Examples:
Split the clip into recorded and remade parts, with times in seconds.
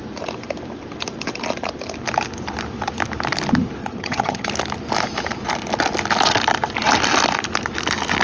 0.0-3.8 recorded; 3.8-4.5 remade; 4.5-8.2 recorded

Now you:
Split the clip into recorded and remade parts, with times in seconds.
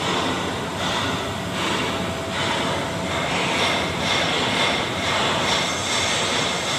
0.0-6.8 recorded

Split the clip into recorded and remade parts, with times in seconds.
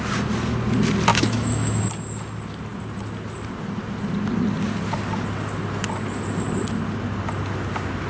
0.0-1.1 recorded; 1.1-1.8 remade; 1.8-8.1 recorded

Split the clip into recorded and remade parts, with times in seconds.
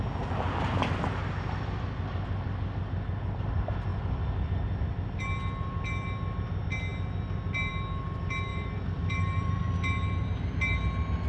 0.0-8.5 recorded; 8.5-9.6 remade; 9.6-11.3 recorded